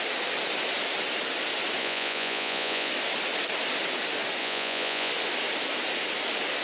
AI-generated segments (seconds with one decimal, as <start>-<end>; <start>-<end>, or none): 1.8-2.9; 4.4-5.1